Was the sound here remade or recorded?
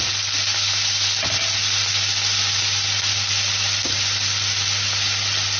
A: recorded